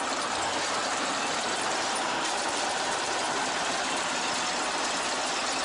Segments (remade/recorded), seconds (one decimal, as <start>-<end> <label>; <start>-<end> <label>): 0.0-0.8 recorded; 0.8-4.2 remade; 4.2-5.6 recorded